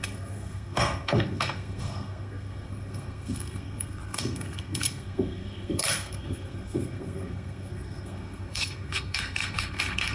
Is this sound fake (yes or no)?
yes